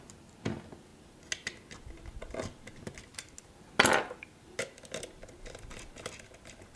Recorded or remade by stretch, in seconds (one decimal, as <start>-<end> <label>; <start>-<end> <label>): 0.0-6.8 recorded